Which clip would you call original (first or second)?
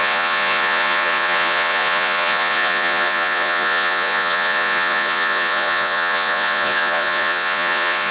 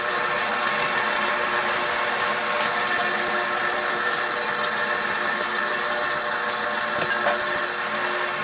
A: second